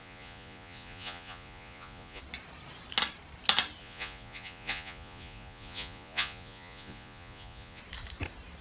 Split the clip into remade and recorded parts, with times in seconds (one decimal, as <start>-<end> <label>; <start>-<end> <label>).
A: 0.0-2.2 remade; 2.2-3.8 recorded; 3.8-7.8 remade; 7.8-8.6 recorded